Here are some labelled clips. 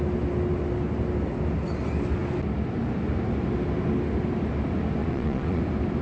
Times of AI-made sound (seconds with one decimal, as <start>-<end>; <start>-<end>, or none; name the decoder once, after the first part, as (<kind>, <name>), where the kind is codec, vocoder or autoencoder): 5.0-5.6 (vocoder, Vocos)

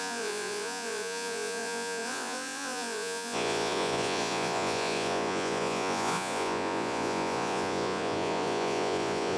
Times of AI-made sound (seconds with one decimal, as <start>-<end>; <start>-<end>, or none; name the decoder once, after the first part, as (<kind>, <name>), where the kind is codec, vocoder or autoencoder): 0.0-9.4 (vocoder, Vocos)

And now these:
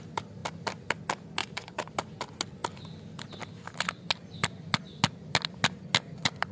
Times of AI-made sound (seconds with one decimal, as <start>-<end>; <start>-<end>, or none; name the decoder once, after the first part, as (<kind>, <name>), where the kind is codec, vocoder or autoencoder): 1.4-1.9 (vocoder, Vocos)